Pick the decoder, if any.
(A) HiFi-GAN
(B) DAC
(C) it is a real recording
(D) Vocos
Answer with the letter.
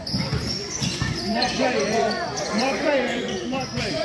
D